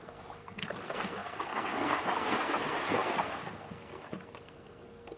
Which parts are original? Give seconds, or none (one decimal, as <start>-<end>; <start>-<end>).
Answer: none